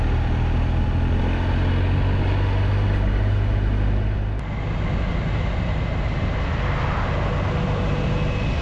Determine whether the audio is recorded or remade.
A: recorded